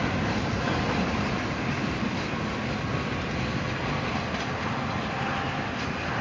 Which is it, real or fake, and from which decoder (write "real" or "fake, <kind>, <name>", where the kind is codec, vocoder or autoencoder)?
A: real